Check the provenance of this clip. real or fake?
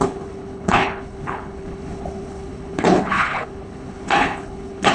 fake